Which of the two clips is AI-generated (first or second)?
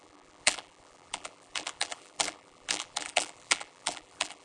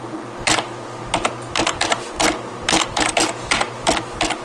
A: first